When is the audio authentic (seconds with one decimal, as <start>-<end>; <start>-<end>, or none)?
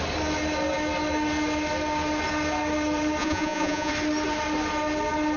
0.0-3.2; 3.9-5.4